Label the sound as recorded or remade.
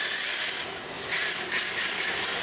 recorded